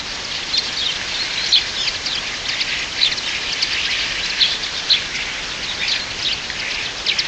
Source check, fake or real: real